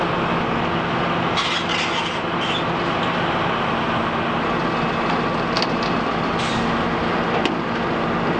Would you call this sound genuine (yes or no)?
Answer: yes